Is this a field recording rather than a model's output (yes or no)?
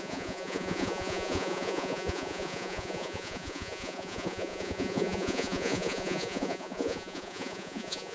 no